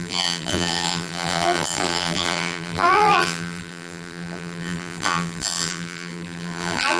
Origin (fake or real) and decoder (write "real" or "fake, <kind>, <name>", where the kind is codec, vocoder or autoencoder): fake, vocoder, BigVGAN v2